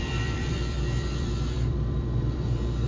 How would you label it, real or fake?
fake